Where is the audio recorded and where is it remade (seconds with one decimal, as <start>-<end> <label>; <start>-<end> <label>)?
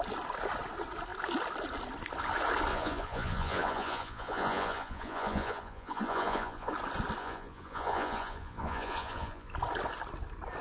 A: 0.0-2.7 recorded; 2.7-6.7 remade; 6.7-7.2 recorded; 7.2-9.5 remade; 9.5-10.6 recorded